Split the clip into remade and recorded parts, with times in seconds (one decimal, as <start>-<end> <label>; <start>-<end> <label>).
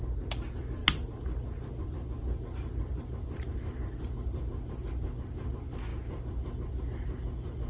0.0-7.7 recorded